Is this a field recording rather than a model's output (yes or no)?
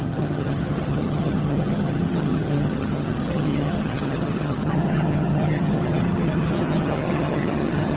no